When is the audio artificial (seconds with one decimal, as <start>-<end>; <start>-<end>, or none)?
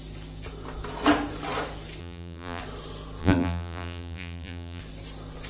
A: 2.0-2.6; 3.2-4.8